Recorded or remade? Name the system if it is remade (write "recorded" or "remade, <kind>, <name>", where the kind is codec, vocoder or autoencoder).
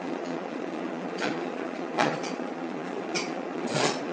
remade, vocoder, Vocos